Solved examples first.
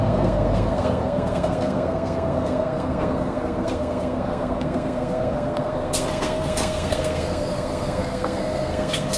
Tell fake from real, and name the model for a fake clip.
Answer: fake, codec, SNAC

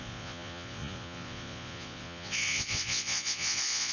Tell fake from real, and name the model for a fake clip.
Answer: fake, vocoder, Vocos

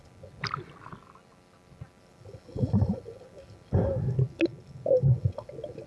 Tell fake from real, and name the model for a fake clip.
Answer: real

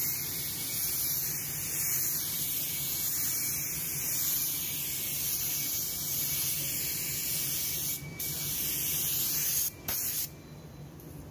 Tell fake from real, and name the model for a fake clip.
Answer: real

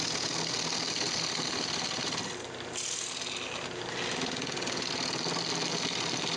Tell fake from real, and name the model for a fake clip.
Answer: real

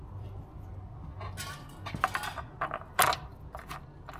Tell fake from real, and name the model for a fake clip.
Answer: real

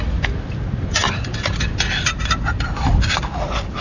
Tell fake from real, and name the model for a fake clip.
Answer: real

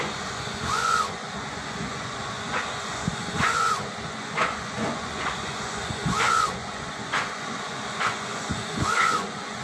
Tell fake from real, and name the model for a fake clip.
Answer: fake, vocoder, Vocos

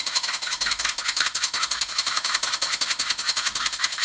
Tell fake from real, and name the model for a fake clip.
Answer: fake, autoencoder, DAC-VAE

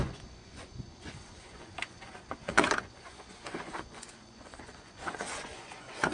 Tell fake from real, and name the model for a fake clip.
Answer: fake, vocoder, Vocos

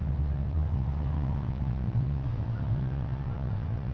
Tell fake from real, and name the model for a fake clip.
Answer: fake, vocoder, WaveNeXt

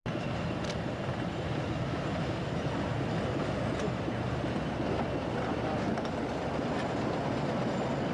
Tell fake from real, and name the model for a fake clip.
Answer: real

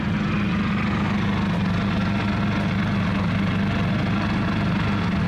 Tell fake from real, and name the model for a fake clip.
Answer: real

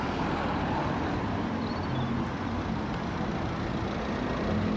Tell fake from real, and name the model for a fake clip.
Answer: real